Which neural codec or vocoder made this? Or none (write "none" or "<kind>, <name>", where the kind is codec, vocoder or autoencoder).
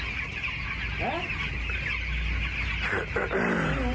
none